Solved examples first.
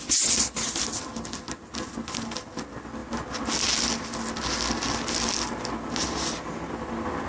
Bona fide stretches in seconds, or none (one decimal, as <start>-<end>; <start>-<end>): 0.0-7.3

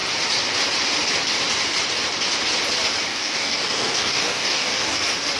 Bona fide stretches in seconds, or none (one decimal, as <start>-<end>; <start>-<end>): 0.0-3.1; 5.0-5.4

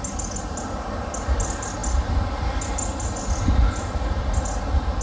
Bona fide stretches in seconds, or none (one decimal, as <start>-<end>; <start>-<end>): 0.0-5.0